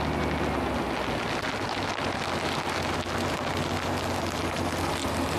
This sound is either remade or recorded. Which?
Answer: recorded